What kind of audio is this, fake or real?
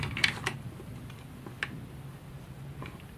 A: real